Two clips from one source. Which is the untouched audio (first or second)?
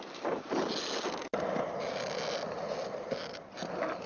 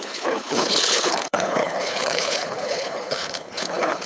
first